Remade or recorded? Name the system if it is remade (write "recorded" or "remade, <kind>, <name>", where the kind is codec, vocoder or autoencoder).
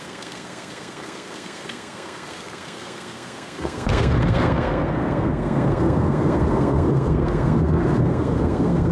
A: remade, codec, SNAC